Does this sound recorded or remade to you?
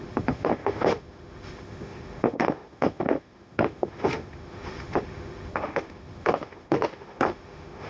remade